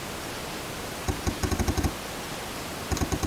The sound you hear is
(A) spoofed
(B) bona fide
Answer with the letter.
B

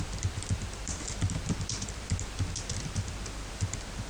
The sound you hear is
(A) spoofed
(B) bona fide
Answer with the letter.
A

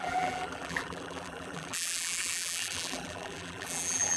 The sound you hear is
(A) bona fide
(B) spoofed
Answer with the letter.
B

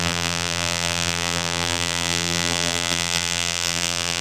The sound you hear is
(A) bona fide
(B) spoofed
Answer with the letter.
B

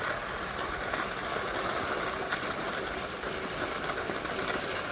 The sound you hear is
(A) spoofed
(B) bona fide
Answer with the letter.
B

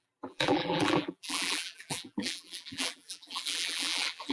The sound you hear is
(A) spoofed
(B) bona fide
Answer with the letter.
A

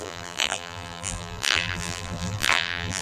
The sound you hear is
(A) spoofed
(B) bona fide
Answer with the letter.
A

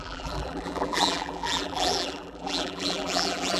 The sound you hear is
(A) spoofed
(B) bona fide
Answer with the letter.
A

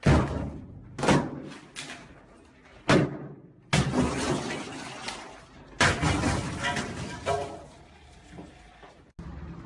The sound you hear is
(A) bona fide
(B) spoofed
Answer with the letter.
A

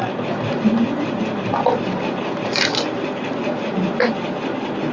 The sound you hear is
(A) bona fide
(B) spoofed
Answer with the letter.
A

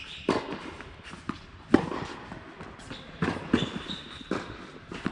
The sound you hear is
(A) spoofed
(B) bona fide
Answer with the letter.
B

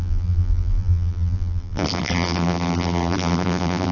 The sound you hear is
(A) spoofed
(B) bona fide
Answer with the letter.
A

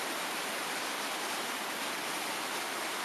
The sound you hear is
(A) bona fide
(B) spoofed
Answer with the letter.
A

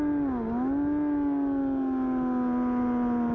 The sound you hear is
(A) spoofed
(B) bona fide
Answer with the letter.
B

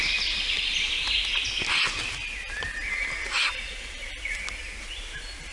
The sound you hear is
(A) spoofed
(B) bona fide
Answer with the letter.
B